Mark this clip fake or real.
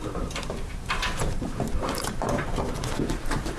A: fake